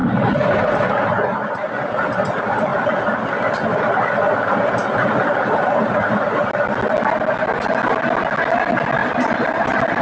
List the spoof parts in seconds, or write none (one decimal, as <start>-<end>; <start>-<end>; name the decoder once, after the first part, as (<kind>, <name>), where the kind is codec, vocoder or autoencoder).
0.0-0.6 (vocoder, BigVGAN v2); 2.7-3.4; 9.0-10.0